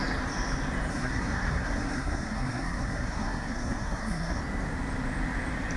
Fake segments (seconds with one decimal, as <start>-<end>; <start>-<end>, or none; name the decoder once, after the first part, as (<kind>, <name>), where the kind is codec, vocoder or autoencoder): 0.9-4.4 (codec, SNAC)